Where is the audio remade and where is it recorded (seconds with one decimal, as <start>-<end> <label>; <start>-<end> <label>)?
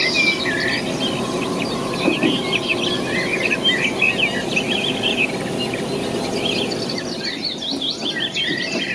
0.0-8.9 recorded